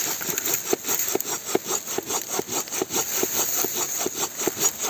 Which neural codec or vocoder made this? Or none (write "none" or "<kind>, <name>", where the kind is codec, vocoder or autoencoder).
none